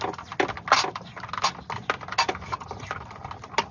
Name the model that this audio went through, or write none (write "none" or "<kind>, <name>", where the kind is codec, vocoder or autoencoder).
none